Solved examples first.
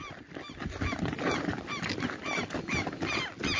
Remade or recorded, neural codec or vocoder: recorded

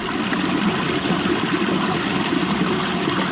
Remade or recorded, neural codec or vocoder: recorded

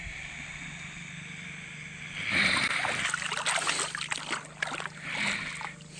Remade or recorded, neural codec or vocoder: recorded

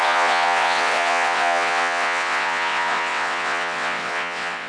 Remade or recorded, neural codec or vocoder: remade, vocoder, WaveNeXt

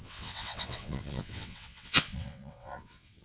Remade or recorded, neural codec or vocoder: remade, vocoder, WaveNeXt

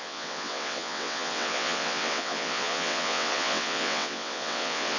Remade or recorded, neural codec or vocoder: remade, vocoder, WaveNeXt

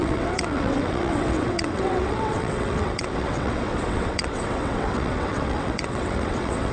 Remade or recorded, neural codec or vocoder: remade, vocoder, WaveNeXt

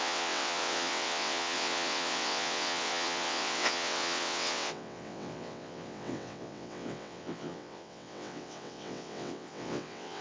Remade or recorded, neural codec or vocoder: remade, vocoder, WaveNeXt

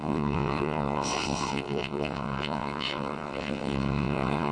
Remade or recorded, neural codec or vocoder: remade, vocoder, WaveNeXt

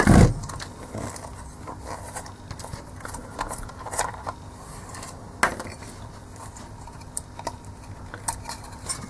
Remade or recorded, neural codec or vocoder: recorded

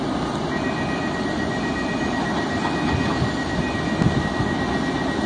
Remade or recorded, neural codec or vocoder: recorded